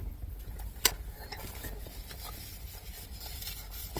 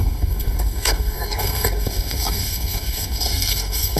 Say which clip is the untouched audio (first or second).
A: first